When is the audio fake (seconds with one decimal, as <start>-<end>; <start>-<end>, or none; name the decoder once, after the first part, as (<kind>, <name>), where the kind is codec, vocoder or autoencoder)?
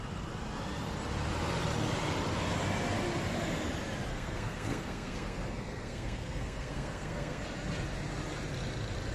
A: 4.1-7.4 (codec, SNAC)